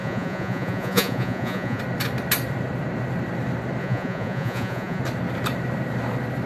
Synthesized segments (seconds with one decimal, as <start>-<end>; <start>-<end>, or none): 0.0-1.8; 3.8-5.0